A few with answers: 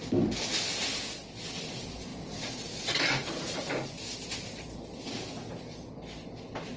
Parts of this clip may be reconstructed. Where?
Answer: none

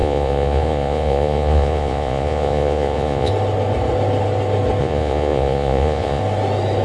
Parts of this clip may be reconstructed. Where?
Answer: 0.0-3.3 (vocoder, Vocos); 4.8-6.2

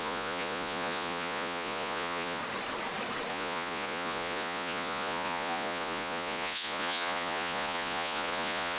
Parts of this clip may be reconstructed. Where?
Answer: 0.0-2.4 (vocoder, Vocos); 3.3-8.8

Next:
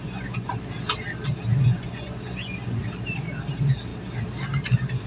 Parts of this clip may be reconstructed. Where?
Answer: 0.0-0.5 (vocoder, Vocos); 1.5-2.8

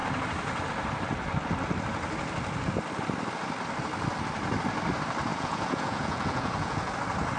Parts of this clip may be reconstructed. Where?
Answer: 5.3-6.9 (vocoder, Vocos)